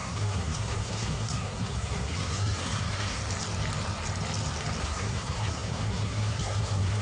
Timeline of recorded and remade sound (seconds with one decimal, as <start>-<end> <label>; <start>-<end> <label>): 0.0-3.2 remade; 3.2-4.8 recorded; 4.8-7.0 remade